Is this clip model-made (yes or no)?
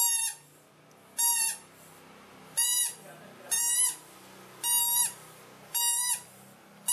no